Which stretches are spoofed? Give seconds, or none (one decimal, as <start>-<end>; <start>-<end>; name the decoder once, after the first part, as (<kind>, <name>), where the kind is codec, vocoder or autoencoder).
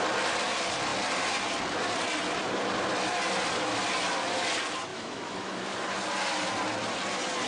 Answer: 4.9-5.6 (autoencoder, DAC-VAE)